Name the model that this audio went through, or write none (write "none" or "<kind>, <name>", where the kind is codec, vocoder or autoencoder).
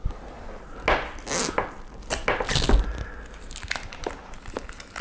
none